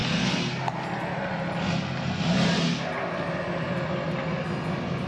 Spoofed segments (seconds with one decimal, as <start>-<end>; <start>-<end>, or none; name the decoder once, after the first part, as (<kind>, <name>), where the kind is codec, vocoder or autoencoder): none